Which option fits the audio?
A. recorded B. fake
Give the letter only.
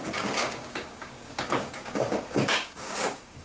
B